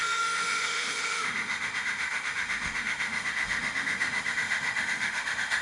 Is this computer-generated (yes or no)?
yes